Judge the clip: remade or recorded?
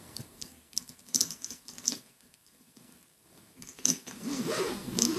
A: remade